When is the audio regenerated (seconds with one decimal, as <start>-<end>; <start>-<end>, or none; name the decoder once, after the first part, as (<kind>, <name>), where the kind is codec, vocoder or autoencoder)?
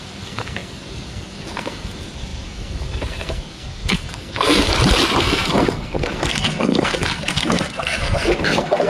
0.0-4.7 (codec, SNAC); 5.2-8.9